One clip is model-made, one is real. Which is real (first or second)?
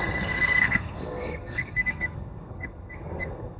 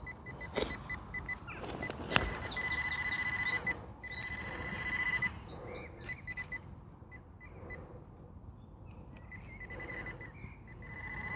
second